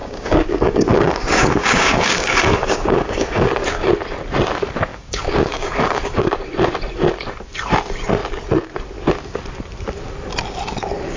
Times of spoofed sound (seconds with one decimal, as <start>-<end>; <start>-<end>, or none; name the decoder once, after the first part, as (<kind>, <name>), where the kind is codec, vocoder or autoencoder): 0.0-3.9 (codec, DAC); 4.9-6.3